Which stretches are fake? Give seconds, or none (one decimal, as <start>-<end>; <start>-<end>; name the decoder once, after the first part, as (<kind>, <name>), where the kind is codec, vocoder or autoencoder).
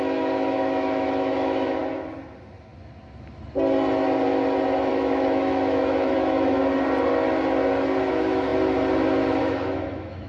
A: 0.0-1.8 (autoencoder, DAC-VAE); 4.9-6.6; 8.1-8.5; 9.4-10.3